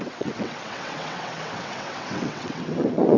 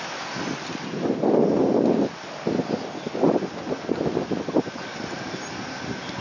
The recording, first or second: second